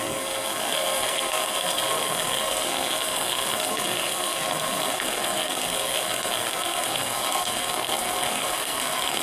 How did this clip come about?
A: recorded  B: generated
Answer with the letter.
B